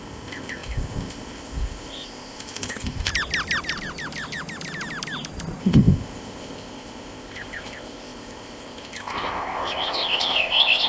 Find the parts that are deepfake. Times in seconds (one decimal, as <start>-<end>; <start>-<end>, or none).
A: 0.0-3.1; 5.6-10.9